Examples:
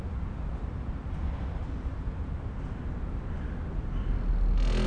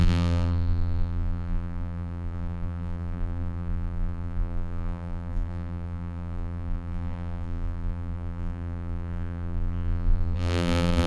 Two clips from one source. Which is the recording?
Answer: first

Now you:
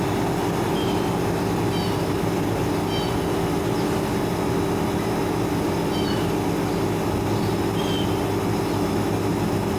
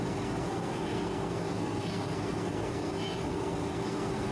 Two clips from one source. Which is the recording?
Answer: first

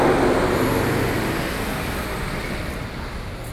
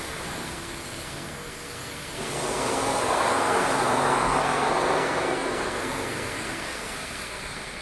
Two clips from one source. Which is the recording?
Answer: first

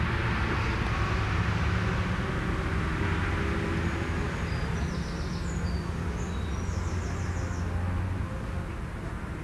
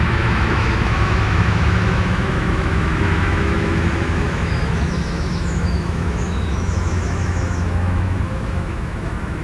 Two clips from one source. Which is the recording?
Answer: first